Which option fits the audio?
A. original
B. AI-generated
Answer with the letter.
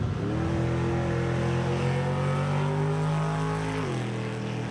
A